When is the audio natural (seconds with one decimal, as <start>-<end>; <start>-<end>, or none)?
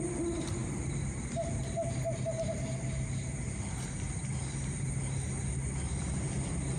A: 0.0-6.8